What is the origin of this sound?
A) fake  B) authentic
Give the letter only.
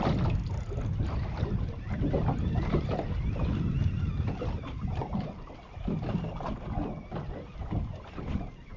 B